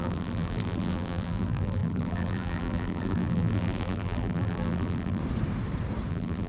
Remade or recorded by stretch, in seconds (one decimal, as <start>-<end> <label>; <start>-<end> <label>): 0.0-5.2 remade; 5.2-6.1 recorded; 6.1-6.5 remade